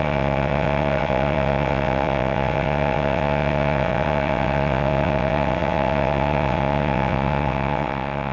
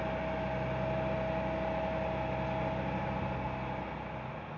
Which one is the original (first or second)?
second